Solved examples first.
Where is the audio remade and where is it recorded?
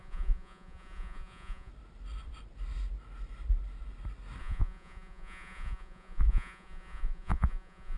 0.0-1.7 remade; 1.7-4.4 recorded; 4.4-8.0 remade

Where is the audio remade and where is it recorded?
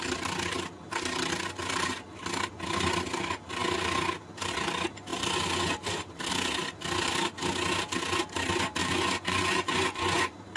0.0-8.8 recorded; 8.8-10.2 remade; 10.2-10.6 recorded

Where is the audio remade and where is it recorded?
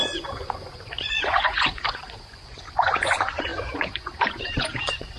0.0-5.2 remade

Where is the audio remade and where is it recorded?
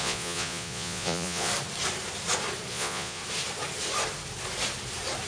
0.0-1.5 remade; 1.5-2.7 recorded; 2.7-3.2 remade; 3.2-5.3 recorded